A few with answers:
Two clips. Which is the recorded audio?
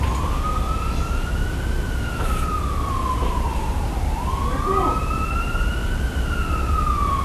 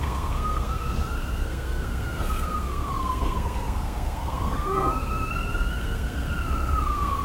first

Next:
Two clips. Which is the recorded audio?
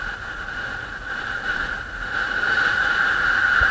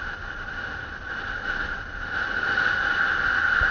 second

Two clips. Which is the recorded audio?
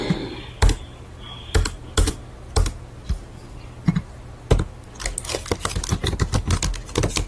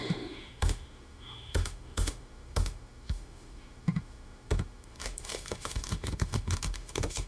first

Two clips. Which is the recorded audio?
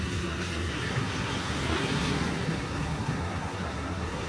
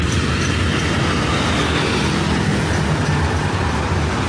second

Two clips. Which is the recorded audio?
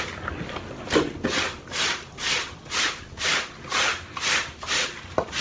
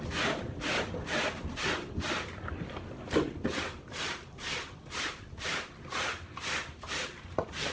first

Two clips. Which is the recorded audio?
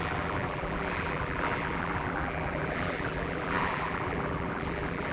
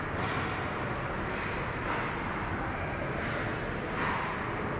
second